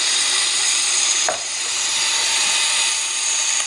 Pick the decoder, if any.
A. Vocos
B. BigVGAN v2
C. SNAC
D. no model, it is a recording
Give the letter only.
B